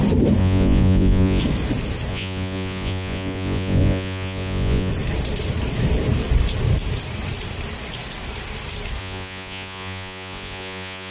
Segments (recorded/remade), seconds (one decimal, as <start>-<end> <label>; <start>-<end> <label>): 0.0-0.4 recorded; 0.4-1.4 remade; 1.4-2.1 recorded; 2.1-4.9 remade; 4.9-9.0 recorded; 9.0-11.1 remade